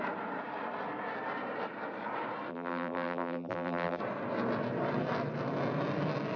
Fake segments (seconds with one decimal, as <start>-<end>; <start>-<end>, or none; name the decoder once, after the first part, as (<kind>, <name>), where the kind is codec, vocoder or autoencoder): 2.5-4.0 (vocoder, BigVGAN v2)